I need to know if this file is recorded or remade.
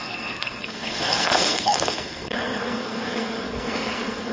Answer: remade